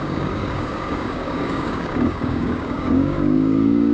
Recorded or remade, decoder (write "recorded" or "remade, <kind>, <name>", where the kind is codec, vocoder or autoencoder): remade, codec, DAC